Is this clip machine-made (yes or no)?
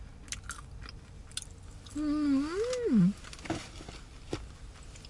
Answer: no